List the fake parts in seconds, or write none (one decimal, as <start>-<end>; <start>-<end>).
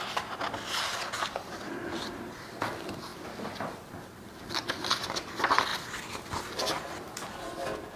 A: none